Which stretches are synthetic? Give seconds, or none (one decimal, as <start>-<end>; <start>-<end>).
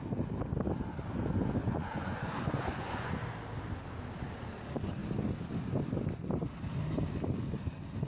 1.6-3.1